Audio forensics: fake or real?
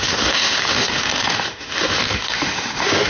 fake